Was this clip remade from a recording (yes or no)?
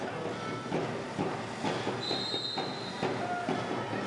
no